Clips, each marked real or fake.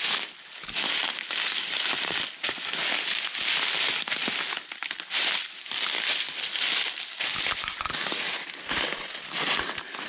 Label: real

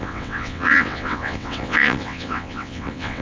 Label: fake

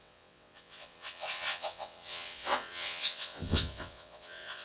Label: fake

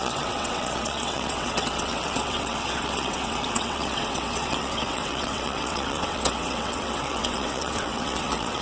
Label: fake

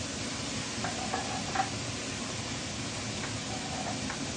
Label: real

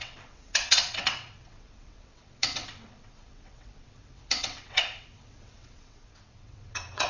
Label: fake